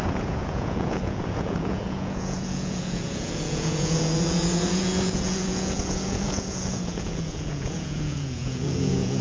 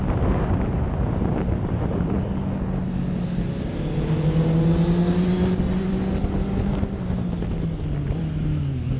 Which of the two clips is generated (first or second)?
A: first